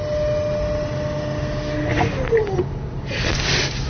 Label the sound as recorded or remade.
recorded